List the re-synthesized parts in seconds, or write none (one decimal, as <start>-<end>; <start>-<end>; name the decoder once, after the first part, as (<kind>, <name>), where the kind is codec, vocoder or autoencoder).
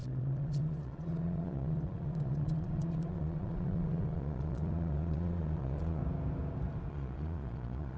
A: 0.0-6.0 (vocoder, Vocos); 6.9-8.0